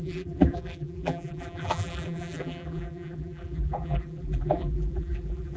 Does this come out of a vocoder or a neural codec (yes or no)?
yes